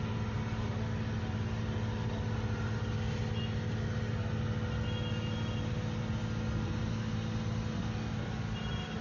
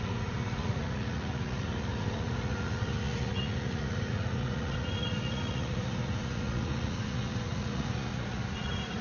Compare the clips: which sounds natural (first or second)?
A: first